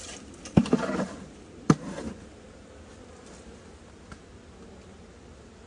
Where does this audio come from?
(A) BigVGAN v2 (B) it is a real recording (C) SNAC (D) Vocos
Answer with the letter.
B